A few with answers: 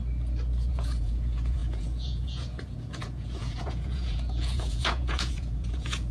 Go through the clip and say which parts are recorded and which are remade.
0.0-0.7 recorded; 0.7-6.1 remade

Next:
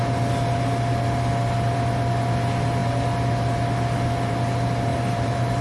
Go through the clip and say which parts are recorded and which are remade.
0.0-4.9 recorded; 4.9-5.6 remade

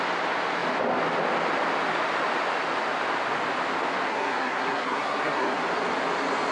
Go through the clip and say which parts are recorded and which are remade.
0.0-4.1 recorded; 4.1-5.6 remade; 5.6-6.5 recorded

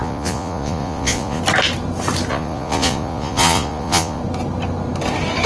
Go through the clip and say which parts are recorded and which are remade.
0.0-1.4 remade; 1.4-2.3 recorded; 2.3-4.2 remade; 4.2-5.5 recorded